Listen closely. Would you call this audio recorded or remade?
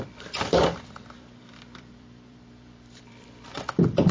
remade